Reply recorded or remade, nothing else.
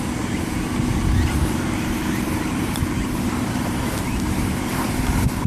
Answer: recorded